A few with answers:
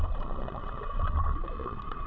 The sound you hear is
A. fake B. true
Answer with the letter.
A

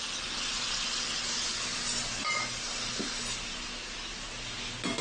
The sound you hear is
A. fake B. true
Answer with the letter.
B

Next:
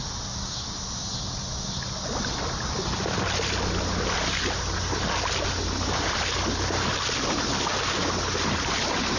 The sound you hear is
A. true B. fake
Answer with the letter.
A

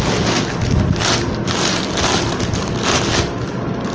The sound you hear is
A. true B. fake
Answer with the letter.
A